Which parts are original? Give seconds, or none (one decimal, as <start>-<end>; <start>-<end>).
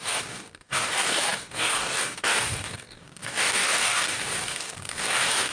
none